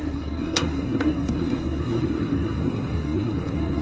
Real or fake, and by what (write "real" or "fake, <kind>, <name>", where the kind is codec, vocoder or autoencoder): fake, codec, SNAC